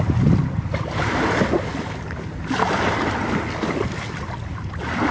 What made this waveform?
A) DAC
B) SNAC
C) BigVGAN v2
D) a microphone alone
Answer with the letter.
D